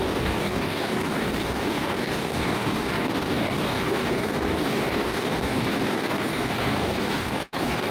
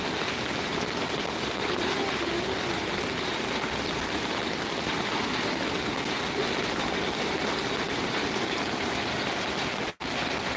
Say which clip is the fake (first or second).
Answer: first